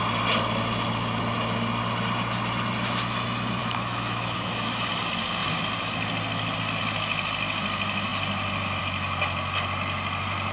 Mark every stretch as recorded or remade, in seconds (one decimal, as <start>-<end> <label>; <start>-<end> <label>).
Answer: 0.0-3.6 recorded; 3.6-4.9 remade; 4.9-10.5 recorded